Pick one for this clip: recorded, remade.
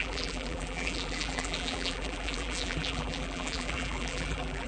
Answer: remade